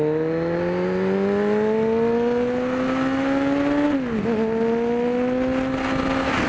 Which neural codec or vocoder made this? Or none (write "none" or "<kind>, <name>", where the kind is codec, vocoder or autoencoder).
none